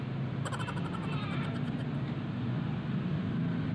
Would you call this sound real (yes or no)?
yes